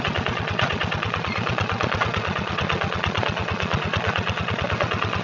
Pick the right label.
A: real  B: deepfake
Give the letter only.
B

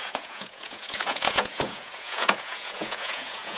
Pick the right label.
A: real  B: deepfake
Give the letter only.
B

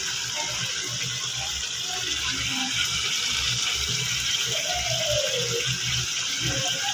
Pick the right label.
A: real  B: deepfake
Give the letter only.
A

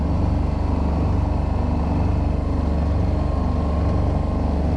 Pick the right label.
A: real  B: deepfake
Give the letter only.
A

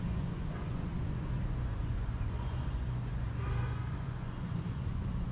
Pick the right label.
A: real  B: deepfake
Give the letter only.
B